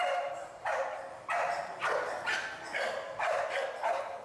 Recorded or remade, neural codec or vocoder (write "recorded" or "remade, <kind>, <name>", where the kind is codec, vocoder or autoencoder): remade, vocoder, BigVGAN v2